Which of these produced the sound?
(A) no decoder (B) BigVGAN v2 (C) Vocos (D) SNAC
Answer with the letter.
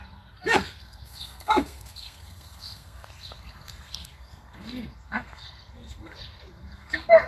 D